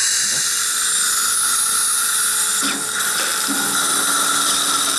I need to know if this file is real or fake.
real